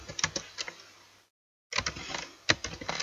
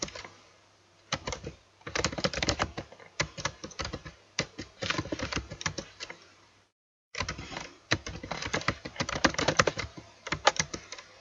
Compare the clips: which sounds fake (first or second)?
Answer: second